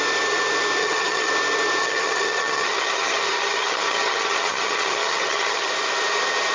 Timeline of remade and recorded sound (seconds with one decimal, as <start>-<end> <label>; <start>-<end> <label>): 0.0-0.8 recorded; 0.8-1.3 remade; 1.3-1.8 recorded; 1.8-5.7 remade; 5.7-6.5 recorded